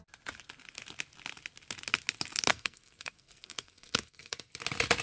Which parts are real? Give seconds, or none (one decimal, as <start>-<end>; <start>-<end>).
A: 0.0-2.5; 4.5-5.0